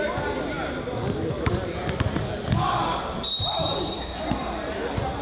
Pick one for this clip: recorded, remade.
recorded